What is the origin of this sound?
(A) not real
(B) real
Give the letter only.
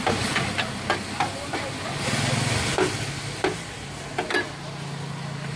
B